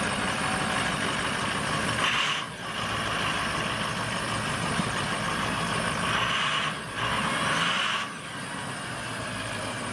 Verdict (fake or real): real